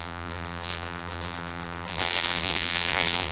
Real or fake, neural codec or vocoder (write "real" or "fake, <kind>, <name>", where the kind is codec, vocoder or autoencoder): fake, vocoder, BigVGAN v2